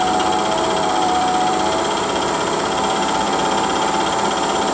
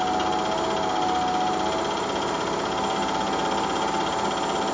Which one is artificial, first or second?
first